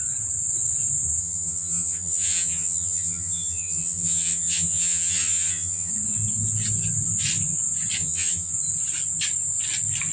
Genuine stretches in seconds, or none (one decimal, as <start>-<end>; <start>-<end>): 0.0-1.2; 5.9-8.0; 8.5-10.1